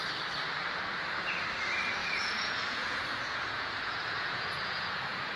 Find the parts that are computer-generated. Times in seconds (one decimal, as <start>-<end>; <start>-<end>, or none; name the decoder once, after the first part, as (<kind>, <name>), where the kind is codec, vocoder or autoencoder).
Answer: 2.0-5.4 (vocoder, Vocos)